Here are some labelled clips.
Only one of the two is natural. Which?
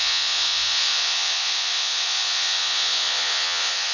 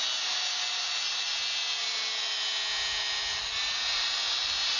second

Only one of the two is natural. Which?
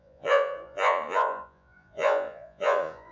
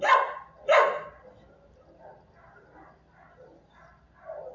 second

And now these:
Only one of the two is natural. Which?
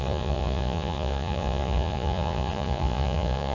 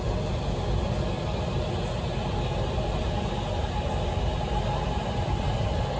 second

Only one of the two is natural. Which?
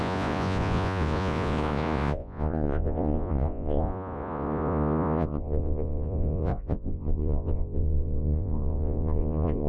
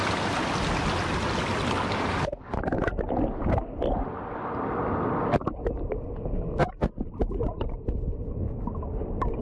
second